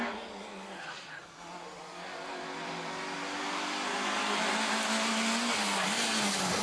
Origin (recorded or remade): recorded